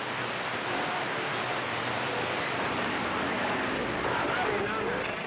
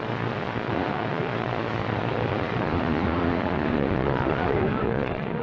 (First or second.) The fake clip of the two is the second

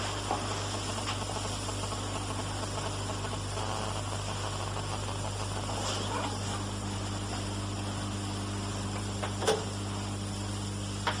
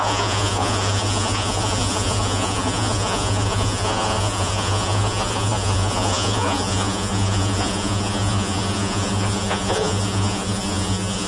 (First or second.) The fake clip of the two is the second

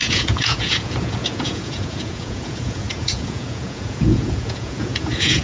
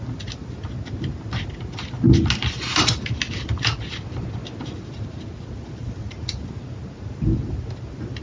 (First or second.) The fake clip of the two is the first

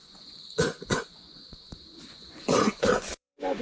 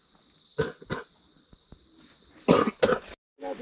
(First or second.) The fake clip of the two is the first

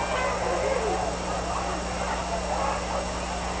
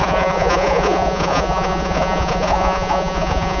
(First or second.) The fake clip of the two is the second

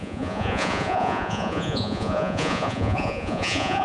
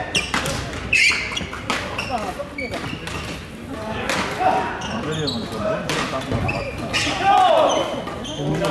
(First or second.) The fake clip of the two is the first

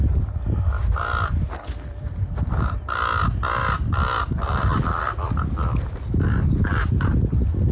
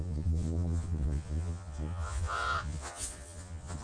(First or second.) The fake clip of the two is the second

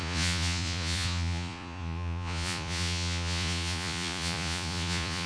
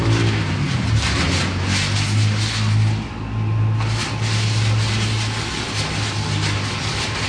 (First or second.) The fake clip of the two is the first